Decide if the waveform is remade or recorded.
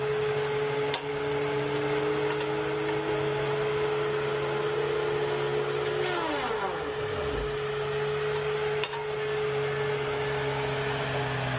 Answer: recorded